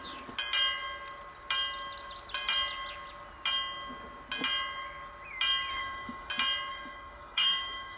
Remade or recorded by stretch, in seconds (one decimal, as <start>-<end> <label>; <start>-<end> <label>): 0.0-5.7 recorded; 5.7-6.3 remade; 6.3-6.7 recorded; 6.7-8.0 remade